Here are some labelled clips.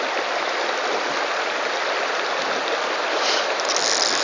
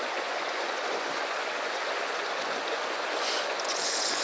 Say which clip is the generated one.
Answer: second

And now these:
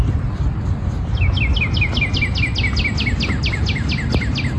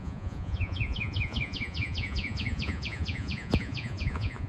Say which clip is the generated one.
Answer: second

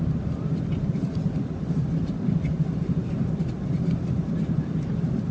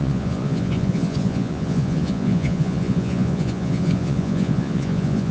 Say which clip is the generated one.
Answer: second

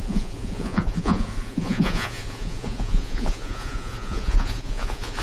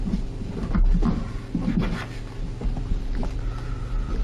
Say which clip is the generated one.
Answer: first